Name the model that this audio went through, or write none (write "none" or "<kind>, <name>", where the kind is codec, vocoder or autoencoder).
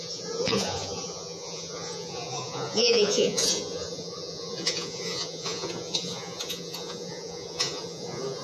vocoder, Vocos